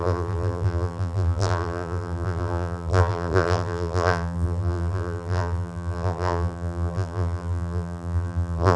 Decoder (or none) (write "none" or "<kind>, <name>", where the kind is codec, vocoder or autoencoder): vocoder, BigVGAN v2